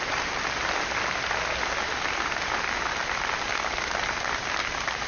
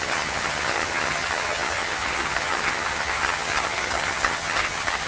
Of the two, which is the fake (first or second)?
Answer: second